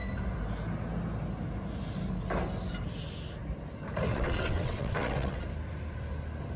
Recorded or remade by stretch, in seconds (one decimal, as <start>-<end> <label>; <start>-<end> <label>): 0.0-4.1 recorded; 4.1-5.4 remade; 5.4-6.6 recorded